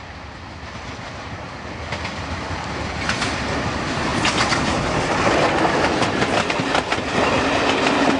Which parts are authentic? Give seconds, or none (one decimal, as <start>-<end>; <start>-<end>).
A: 0.0-8.2